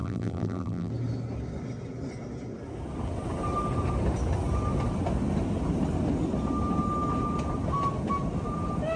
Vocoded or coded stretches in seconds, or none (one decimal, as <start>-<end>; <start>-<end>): 0.0-0.9

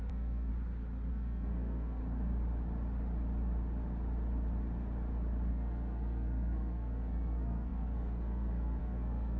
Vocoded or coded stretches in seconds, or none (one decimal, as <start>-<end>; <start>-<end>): 0.0-0.5; 1.1-2.0; 5.5-9.4

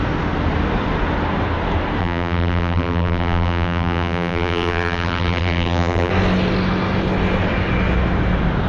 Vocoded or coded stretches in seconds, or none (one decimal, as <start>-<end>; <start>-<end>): 2.0-6.1

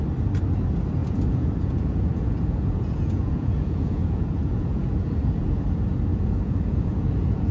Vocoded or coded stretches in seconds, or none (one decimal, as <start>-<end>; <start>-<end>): 1.0-5.5; 6.1-7.5

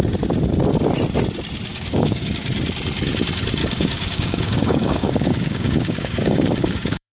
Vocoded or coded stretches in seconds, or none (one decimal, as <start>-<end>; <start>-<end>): 1.7-2.3; 3.6-7.1